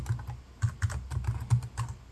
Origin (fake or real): real